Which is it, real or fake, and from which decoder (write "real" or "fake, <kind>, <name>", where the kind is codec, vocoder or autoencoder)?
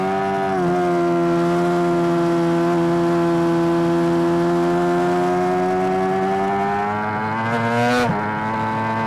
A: real